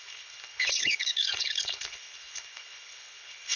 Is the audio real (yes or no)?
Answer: no